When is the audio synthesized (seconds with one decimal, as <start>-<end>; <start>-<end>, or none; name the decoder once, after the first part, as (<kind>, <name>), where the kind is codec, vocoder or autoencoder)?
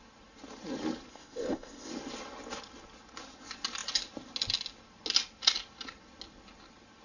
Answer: 1.1-1.9 (codec, ZipCodec)